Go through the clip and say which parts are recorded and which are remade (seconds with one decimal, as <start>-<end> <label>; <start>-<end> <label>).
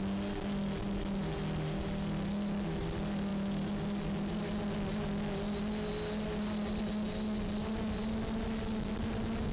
0.0-9.5 recorded